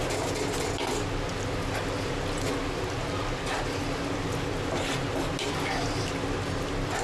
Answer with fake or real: real